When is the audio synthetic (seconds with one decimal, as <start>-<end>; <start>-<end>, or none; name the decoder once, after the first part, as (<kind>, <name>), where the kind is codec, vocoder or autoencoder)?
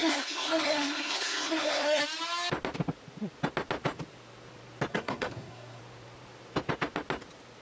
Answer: 0.0-2.0 (codec, SNAC); 4.9-5.8